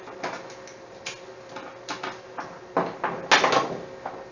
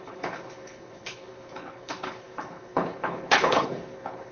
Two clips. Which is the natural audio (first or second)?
first